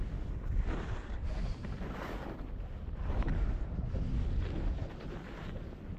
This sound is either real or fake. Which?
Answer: real